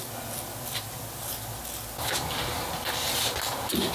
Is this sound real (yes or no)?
yes